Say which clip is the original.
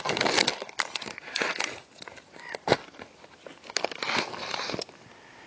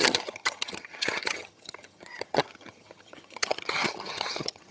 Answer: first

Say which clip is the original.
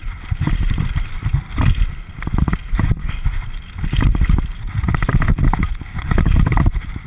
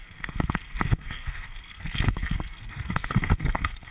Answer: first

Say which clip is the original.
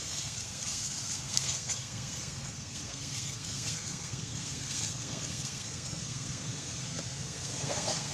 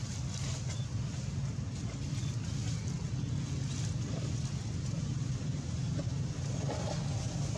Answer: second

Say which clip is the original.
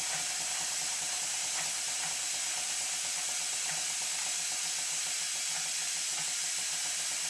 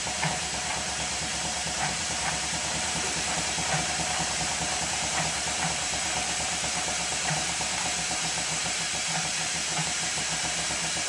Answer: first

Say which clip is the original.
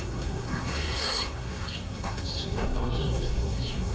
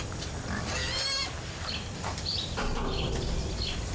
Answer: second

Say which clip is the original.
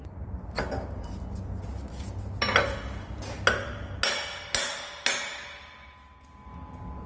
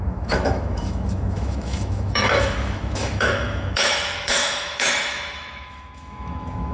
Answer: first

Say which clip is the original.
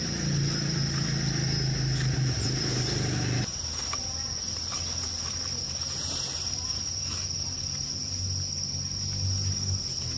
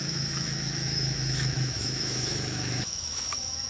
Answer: first